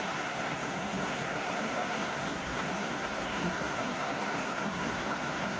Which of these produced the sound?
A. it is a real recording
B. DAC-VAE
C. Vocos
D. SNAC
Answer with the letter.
D